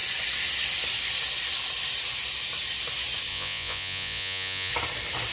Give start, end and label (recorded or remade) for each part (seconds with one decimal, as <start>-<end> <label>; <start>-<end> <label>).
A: 0.0-3.3 recorded; 3.3-4.7 remade; 4.7-5.3 recorded